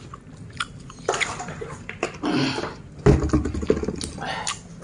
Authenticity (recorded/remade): recorded